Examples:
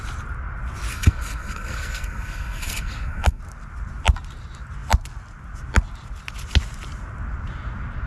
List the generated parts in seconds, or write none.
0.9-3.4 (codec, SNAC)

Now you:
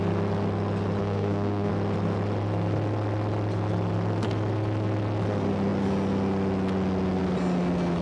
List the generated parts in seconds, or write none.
1.0-1.7 (codec, SNAC)